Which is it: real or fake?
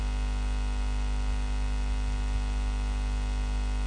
real